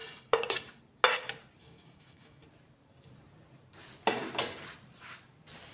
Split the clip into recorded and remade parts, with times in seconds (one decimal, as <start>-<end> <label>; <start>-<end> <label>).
0.0-1.6 recorded; 1.6-2.4 remade; 2.4-5.7 recorded